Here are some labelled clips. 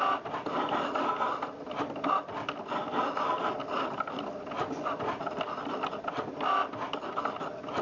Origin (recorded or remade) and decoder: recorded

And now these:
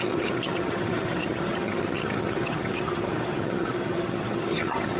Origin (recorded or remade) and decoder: remade, vocoder, HiFi-GAN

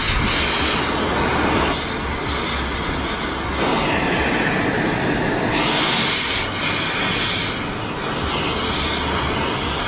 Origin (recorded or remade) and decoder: recorded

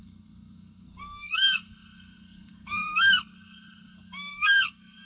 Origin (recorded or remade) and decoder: remade, codec, SNAC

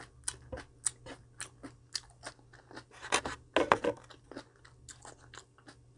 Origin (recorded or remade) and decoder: recorded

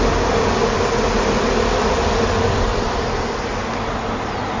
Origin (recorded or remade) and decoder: recorded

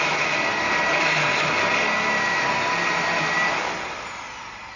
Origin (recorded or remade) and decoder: recorded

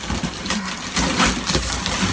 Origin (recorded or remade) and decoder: recorded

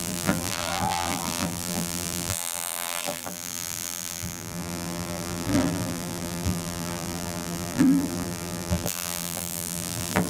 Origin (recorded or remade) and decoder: remade, vocoder, BigVGAN v2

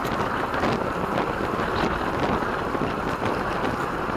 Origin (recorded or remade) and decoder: recorded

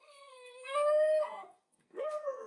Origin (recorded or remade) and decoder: remade, codec, SNAC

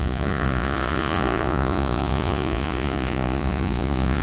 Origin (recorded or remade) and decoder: remade, vocoder, Vocos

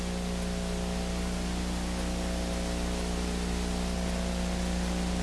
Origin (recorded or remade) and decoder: recorded